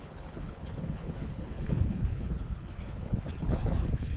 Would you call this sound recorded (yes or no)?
no